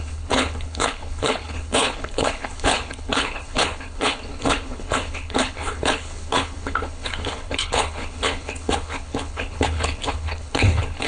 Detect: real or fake fake